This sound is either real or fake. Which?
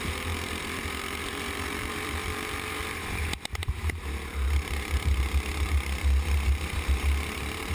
fake